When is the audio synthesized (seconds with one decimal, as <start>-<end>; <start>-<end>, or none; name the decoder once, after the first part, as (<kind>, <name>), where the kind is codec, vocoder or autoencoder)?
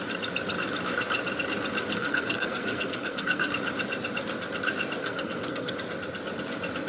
1.9-3.5 (codec, SNAC); 5.0-5.7